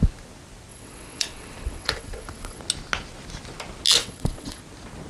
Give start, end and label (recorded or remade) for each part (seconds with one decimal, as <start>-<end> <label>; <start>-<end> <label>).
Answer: 0.0-0.7 recorded; 0.7-2.6 remade; 2.6-4.0 recorded; 4.0-4.6 remade; 4.6-5.1 recorded